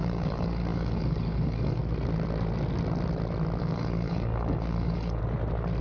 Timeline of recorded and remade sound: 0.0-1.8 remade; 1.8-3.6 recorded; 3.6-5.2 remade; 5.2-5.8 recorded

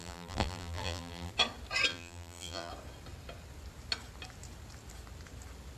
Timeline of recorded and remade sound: 0.0-1.3 remade; 1.3-1.9 recorded; 1.9-2.7 remade; 2.7-5.8 recorded

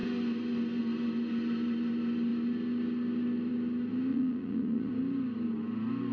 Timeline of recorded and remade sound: 0.0-4.1 recorded; 4.1-4.9 remade; 4.9-6.1 recorded

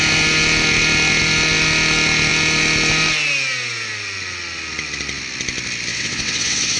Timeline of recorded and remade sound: 0.0-5.9 recorded; 5.9-6.8 remade

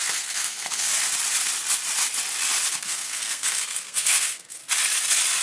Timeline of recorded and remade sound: 0.0-0.9 remade; 0.9-2.7 recorded; 2.7-4.6 remade; 4.6-5.4 recorded

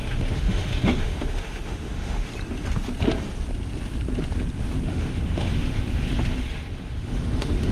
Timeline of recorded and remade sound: 0.0-2.3 remade; 2.3-4.9 recorded; 4.9-7.7 remade